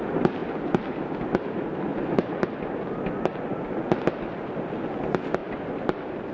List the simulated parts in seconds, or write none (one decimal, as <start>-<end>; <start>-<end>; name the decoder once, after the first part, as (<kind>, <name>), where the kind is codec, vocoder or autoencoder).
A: 5.4-6.3 (vocoder, BigVGAN v2)